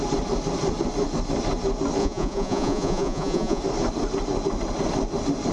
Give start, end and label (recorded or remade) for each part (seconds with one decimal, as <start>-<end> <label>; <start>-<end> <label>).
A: 0.0-2.0 recorded; 2.0-3.6 remade; 3.6-5.5 recorded

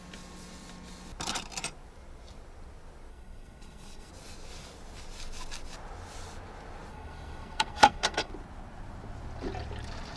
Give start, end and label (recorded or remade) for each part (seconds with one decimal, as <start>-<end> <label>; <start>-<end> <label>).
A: 0.0-3.1 recorded; 3.1-4.1 remade; 4.1-6.9 recorded; 6.9-8.3 remade; 8.3-10.2 recorded

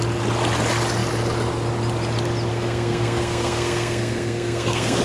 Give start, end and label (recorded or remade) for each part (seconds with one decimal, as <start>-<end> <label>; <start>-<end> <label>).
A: 0.0-2.5 recorded; 2.5-5.0 remade